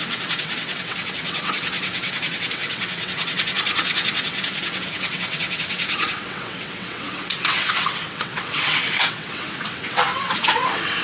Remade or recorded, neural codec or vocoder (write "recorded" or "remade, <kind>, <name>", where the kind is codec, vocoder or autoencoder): remade, vocoder, WaveNeXt